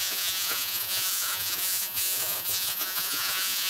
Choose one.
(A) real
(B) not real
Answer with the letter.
B